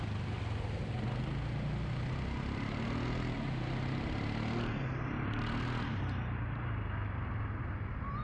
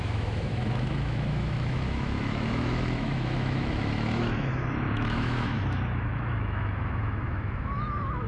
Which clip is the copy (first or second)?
second